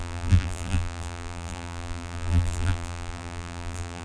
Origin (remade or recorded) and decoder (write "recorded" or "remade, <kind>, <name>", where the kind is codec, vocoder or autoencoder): remade, vocoder, BigVGAN v2